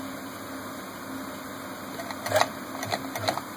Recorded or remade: recorded